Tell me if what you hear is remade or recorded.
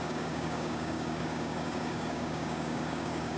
remade